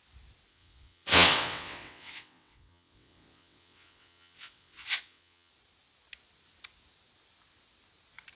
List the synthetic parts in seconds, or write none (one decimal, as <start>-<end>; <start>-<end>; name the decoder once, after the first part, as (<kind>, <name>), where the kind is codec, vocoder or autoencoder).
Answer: 0.5-5.5 (vocoder, WaveNeXt)